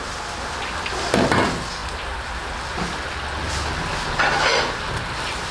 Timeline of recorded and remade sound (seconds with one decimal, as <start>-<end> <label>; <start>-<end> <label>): 0.0-5.5 recorded